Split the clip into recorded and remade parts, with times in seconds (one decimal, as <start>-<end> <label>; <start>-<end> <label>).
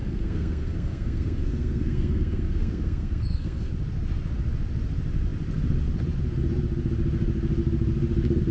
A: 0.0-3.7 remade; 3.7-8.5 recorded